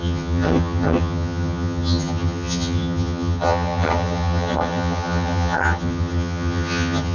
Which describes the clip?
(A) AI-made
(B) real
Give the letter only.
A